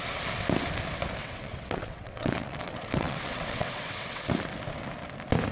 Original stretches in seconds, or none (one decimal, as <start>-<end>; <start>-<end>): 0.0-1.2; 4.3-5.5